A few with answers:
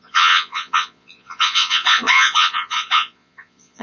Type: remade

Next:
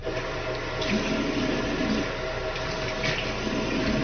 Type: recorded